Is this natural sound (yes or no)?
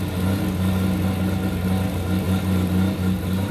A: yes